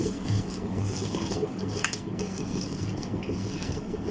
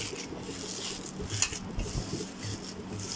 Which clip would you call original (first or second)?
second